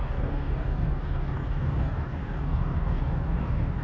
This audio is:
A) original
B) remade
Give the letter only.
B